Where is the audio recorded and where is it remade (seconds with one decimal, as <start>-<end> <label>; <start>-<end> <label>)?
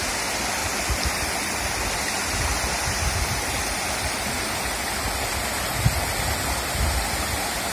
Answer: 0.0-7.7 recorded